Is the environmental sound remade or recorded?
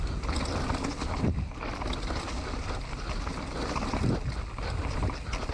recorded